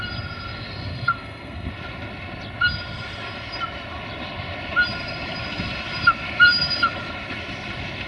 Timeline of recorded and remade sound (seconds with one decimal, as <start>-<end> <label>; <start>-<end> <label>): 0.0-0.9 recorded; 0.9-1.7 remade; 1.7-8.1 recorded